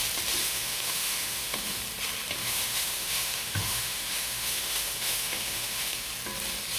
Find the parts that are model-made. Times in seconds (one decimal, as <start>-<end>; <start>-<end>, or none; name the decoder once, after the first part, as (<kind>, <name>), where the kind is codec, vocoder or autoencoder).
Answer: 0.4-1.8 (autoencoder, DAC-VAE); 2.4-6.1